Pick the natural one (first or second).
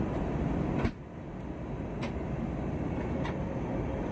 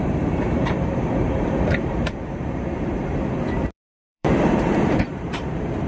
first